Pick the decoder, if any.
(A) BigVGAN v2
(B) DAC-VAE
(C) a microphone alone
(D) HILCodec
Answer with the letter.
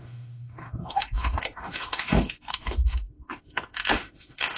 B